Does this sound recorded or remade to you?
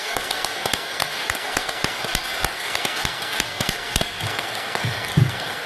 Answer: remade